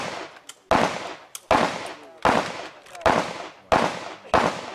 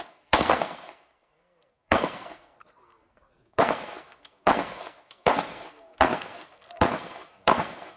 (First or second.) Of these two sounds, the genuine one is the first